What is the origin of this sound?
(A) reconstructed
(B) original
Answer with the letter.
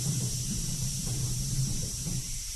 A